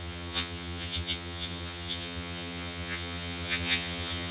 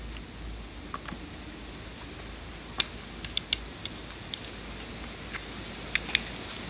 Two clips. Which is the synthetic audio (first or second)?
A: first